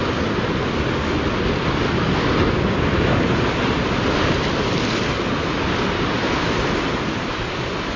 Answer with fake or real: real